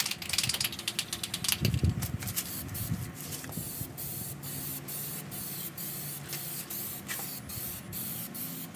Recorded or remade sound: recorded